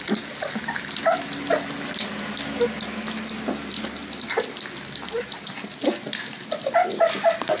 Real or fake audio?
real